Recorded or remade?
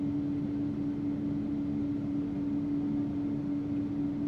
recorded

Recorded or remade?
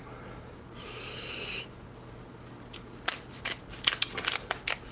recorded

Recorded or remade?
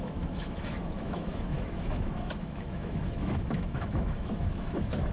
remade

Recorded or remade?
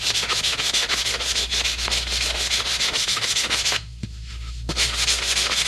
remade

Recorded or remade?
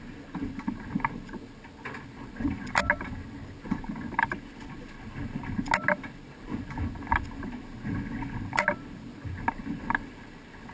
recorded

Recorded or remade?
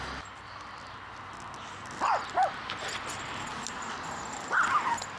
recorded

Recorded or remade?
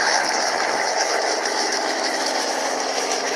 remade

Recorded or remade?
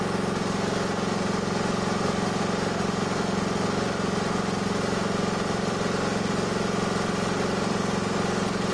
recorded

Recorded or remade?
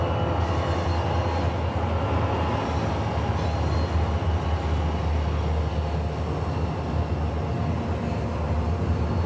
recorded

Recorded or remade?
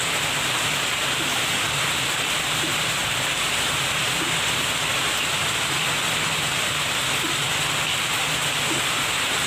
recorded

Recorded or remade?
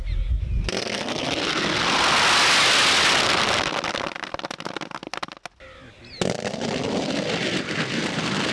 recorded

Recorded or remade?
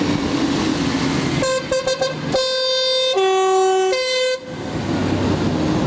recorded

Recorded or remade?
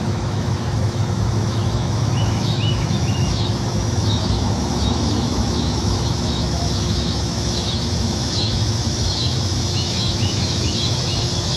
remade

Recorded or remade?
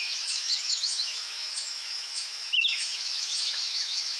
remade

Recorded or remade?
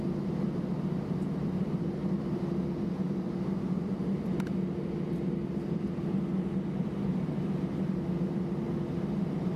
recorded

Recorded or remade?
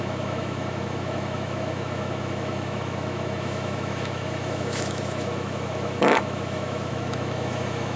remade